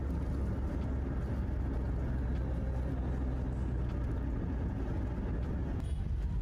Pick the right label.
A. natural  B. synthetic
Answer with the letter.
A